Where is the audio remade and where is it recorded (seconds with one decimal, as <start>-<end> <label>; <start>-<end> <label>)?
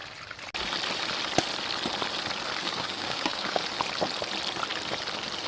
0.0-2.6 recorded; 2.6-3.6 remade; 3.6-5.5 recorded